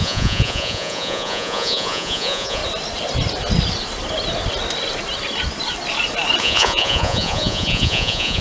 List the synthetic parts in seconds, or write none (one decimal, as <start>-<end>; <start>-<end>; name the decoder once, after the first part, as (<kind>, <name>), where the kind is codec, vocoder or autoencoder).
0.0-2.6 (vocoder, Vocos); 6.4-8.4